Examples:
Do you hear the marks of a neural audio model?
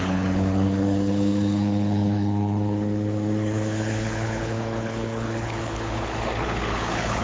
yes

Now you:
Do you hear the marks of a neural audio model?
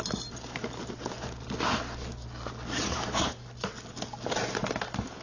no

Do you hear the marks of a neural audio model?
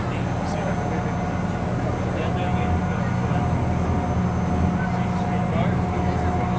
no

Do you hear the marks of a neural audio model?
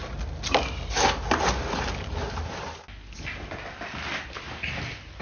no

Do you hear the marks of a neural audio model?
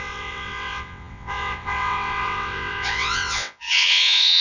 yes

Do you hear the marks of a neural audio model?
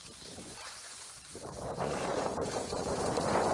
yes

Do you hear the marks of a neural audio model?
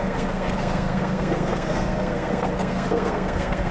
yes